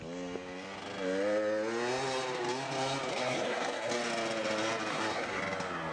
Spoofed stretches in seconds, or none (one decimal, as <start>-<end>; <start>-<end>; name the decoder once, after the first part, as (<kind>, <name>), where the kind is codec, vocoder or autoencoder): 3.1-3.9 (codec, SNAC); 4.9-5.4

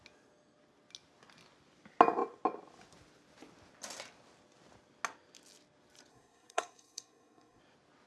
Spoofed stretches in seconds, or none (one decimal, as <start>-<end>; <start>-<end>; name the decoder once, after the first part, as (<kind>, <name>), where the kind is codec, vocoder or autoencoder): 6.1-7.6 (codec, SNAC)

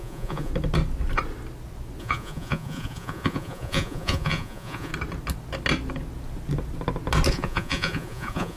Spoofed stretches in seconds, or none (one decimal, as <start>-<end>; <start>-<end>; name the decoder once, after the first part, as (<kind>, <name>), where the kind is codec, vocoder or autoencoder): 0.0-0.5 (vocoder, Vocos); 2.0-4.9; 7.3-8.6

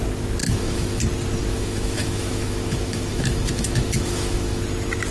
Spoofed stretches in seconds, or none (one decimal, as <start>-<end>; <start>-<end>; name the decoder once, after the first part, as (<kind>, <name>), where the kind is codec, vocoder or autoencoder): 0.4-1.0 (autoencoder, DAC-VAE); 1.5-4.6